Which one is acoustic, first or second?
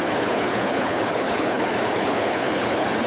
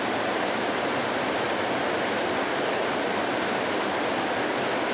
second